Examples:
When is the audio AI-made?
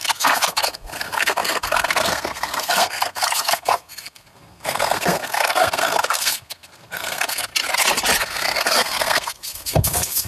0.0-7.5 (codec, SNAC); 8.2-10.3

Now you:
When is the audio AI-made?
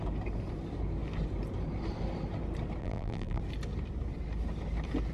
2.8-3.4 (vocoder, BigVGAN v2)